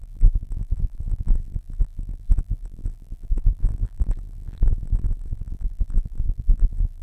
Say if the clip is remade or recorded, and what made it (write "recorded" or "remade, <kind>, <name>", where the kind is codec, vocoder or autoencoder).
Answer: remade, vocoder, BigVGAN v2